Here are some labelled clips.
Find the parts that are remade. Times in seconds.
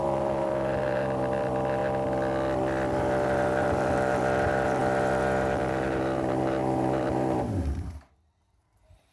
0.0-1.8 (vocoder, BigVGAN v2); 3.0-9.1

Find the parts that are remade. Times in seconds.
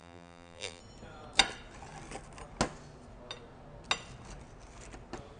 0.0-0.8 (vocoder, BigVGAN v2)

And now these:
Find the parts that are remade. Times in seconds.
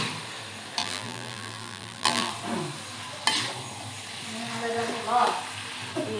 0.8-2.3 (vocoder, BigVGAN v2)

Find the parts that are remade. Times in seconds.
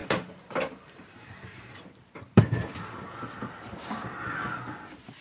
0.0-3.1 (vocoder, BigVGAN v2)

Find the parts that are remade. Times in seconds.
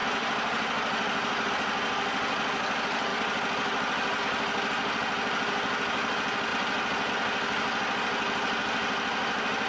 0.0-1.5 (vocoder, BigVGAN v2); 3.1-4.2